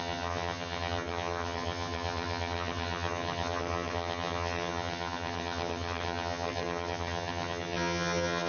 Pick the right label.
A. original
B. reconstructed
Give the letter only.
B